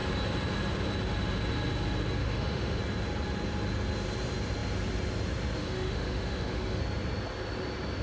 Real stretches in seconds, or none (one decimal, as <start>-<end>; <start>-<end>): 0.0-2.2; 2.8-5.6; 6.8-8.0